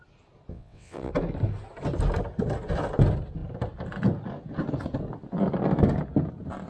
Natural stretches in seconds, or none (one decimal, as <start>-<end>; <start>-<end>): 0.0-0.5; 1.1-6.7